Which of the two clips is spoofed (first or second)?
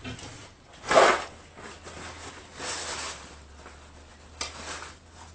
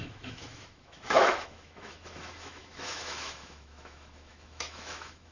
second